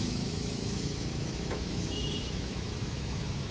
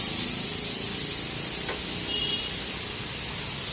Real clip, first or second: second